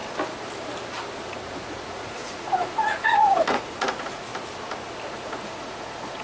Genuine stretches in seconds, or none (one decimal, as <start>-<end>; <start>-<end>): 0.0-1.4; 4.3-5.1